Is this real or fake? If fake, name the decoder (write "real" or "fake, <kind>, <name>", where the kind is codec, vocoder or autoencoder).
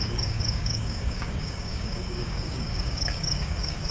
fake, codec, DAC